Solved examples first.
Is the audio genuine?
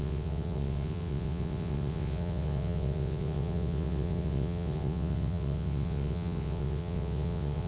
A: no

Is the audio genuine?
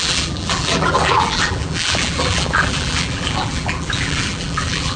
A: no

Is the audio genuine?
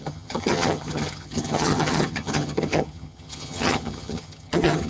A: no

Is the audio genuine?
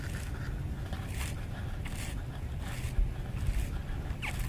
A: yes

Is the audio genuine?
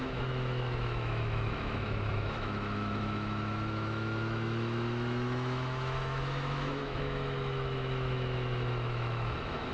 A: no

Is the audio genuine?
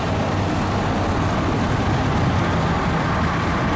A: yes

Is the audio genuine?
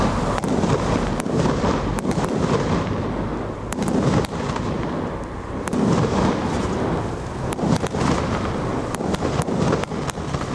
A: yes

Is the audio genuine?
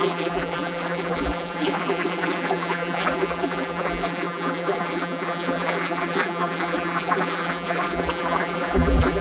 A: no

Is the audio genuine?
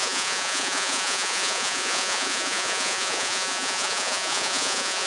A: no